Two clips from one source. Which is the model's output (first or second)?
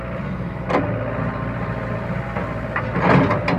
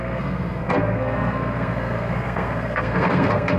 second